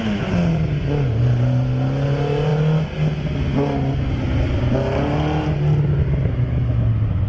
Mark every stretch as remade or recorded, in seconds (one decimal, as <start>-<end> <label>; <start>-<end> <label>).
0.0-7.3 recorded